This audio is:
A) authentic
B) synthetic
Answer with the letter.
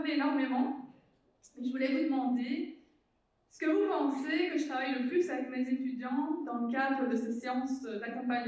A